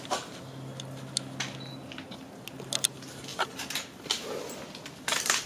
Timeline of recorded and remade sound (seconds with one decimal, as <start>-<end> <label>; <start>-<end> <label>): 0.0-3.3 recorded; 3.3-5.5 remade